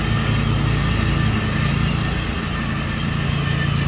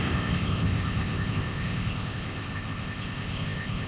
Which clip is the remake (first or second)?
second